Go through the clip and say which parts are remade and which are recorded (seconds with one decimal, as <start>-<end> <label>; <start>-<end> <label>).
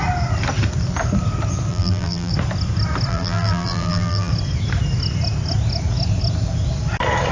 0.0-1.7 recorded; 1.7-2.3 remade; 2.3-3.1 recorded; 3.1-4.3 remade; 4.3-7.3 recorded